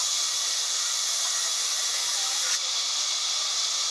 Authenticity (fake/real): real